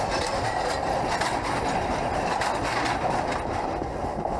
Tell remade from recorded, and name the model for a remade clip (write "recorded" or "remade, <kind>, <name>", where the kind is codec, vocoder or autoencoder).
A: recorded